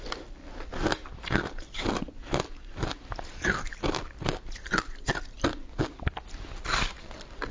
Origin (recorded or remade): recorded